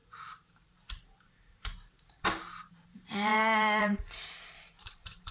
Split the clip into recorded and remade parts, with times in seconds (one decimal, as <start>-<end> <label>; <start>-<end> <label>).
0.0-5.3 remade